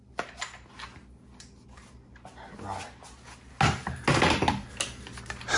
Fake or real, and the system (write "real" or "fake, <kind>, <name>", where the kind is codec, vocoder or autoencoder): real